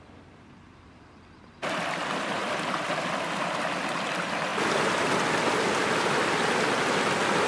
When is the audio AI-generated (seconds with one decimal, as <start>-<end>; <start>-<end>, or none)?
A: 2.4-3.0; 4.5-5.0; 5.8-6.6